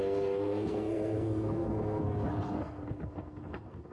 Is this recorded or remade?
remade